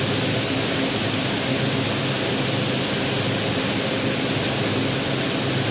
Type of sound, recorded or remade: recorded